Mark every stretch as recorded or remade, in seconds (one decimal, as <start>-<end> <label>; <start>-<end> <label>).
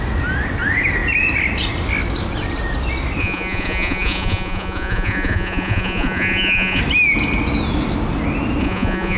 0.0-3.2 recorded; 3.2-6.8 remade; 6.8-8.6 recorded; 8.6-9.2 remade